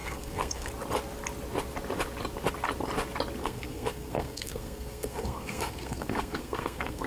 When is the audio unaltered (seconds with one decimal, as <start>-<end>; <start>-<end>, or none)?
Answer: 0.7-3.4